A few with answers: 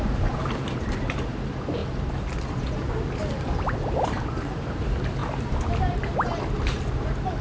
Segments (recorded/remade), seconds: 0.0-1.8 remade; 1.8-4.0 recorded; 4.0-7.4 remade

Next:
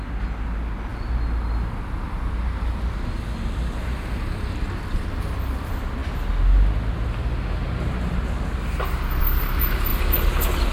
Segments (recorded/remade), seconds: 0.0-10.7 recorded

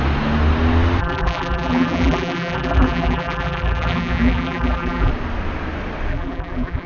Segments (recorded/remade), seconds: 0.0-1.0 recorded; 1.0-5.1 remade; 5.1-6.1 recorded; 6.1-6.9 remade

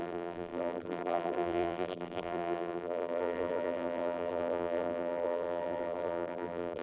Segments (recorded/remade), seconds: 0.0-6.8 remade

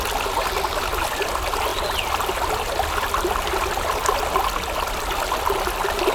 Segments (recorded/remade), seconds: 0.0-6.1 recorded

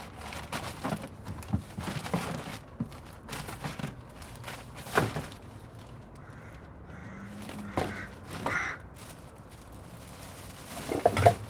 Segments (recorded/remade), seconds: 0.0-2.5 recorded; 2.5-3.4 remade; 3.4-3.8 recorded; 3.8-5.2 remade; 5.2-11.5 recorded

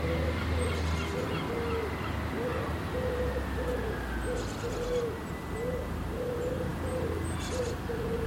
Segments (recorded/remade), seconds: 0.0-8.3 recorded

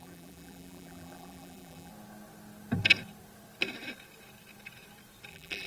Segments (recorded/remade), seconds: 0.0-1.9 remade; 1.9-5.3 recorded; 5.3-5.7 remade